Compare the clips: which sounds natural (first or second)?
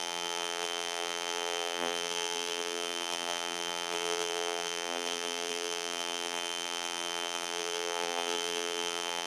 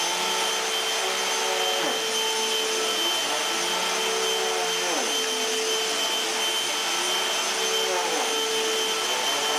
second